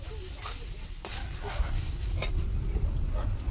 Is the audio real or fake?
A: real